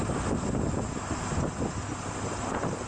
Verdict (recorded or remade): recorded